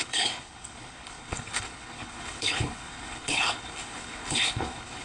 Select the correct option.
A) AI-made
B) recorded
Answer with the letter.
A